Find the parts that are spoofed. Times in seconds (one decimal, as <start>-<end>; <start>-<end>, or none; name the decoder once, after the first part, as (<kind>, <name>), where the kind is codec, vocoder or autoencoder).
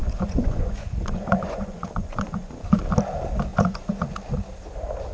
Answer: 0.0-2.8 (vocoder, Vocos); 3.5-4.1